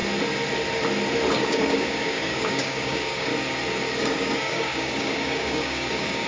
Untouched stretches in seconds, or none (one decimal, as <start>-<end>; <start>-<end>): 0.0-1.3; 3.3-4.0